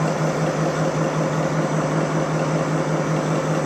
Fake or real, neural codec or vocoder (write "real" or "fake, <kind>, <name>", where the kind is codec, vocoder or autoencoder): real